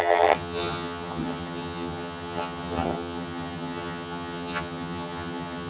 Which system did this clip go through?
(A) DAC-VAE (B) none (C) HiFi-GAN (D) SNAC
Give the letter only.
C